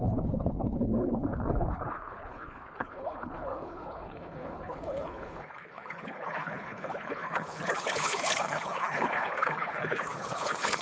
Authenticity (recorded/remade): remade